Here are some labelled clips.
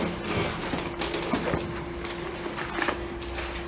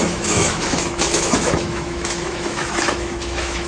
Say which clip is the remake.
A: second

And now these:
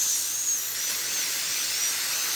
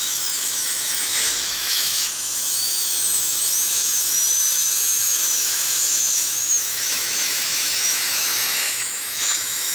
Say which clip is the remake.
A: second